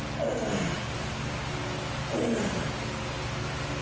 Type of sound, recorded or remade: recorded